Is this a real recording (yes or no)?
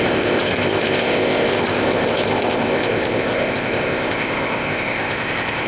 no